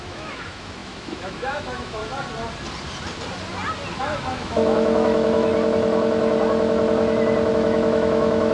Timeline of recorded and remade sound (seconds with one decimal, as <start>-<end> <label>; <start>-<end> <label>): 0.0-2.0 remade; 2.0-4.0 recorded; 4.0-5.5 remade; 5.5-7.5 recorded; 7.5-8.5 remade